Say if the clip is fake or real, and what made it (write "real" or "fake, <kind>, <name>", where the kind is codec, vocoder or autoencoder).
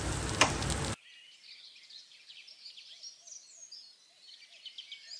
real